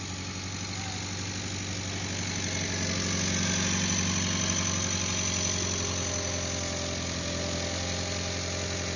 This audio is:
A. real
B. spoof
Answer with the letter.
A